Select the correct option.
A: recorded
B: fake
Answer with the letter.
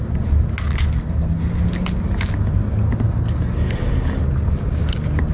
A